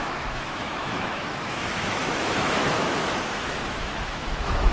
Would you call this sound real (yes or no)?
no